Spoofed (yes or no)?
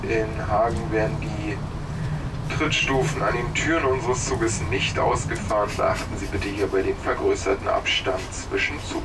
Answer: no